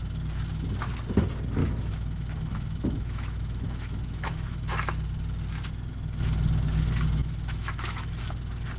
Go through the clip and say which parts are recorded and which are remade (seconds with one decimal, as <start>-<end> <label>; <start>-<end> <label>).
0.0-1.6 recorded; 1.6-4.7 remade; 4.7-7.2 recorded; 7.2-8.2 remade; 8.2-8.8 recorded